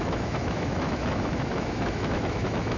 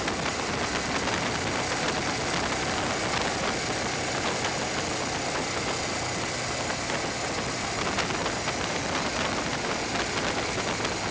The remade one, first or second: first